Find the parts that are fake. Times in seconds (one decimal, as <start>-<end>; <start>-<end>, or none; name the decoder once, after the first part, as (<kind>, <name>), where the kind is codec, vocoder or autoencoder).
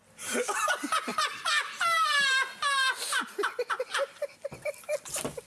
none